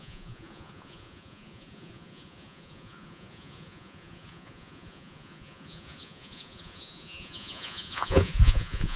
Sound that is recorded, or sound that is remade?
remade